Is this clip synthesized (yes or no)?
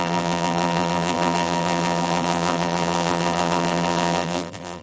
yes